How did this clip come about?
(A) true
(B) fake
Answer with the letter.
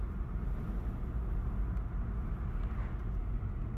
A